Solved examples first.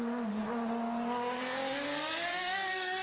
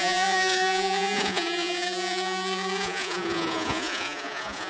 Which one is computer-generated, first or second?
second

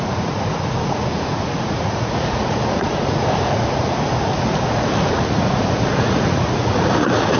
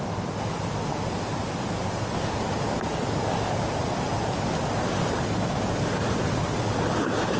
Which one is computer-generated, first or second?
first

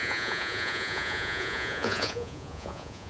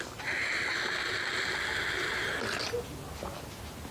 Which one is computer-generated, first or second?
first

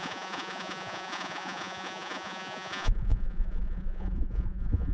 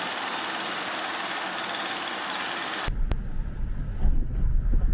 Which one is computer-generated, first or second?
first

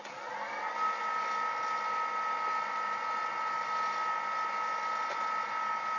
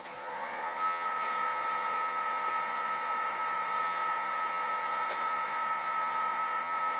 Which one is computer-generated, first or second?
second